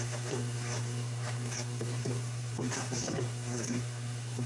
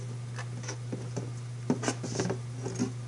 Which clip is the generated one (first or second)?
first